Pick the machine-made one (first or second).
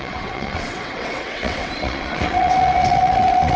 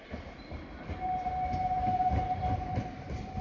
first